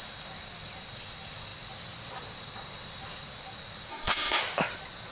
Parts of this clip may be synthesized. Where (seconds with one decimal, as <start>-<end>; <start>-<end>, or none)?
3.9-4.4